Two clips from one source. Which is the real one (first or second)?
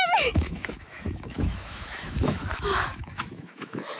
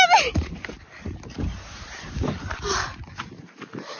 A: second